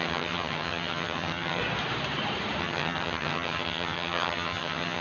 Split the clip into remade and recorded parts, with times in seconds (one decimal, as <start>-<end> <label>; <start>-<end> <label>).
0.0-1.6 remade; 1.6-2.6 recorded; 2.6-5.0 remade